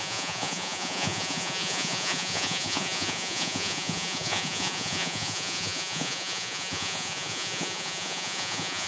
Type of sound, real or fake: fake